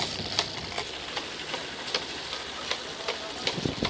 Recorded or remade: recorded